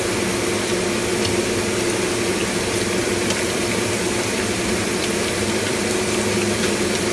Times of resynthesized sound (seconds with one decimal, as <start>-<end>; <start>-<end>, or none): 2.4-7.1